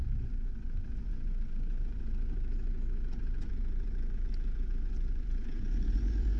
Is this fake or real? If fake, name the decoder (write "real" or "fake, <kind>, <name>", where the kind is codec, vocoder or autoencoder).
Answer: fake, vocoder, Vocos